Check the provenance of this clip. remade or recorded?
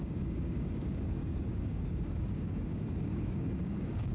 remade